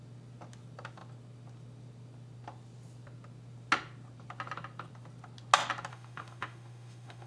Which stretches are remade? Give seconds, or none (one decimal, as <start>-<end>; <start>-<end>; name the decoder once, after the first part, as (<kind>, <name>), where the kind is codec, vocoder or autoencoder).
5.9-7.3 (autoencoder, DAC-VAE)